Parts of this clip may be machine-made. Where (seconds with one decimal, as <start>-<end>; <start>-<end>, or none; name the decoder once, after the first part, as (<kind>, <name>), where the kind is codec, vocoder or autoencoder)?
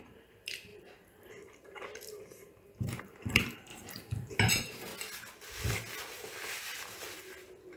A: 0.0-4.9 (vocoder, BigVGAN v2)